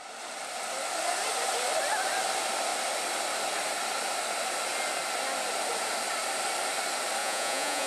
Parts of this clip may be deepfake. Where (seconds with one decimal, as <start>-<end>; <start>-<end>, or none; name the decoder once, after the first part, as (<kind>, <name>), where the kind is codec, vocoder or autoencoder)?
7.2-7.9 (vocoder, Vocos)